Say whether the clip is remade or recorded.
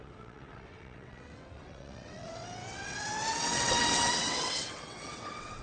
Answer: remade